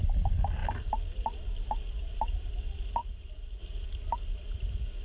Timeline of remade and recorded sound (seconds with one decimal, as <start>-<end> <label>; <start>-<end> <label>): 0.0-5.0 recorded